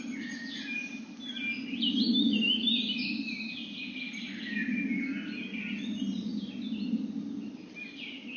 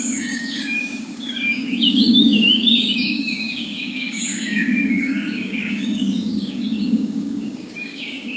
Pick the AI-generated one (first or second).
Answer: second